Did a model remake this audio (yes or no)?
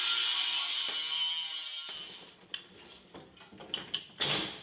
no